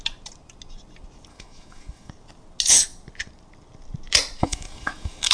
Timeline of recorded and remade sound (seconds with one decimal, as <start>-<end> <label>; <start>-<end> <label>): 0.0-1.3 recorded; 1.3-2.1 remade; 2.1-4.4 recorded; 4.4-5.3 remade